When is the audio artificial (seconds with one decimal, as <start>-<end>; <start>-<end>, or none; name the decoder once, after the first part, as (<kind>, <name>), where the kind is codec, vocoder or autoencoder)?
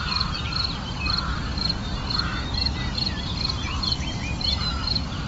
0.0-5.3 (vocoder, BigVGAN v2)